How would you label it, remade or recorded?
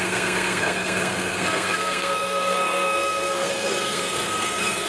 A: remade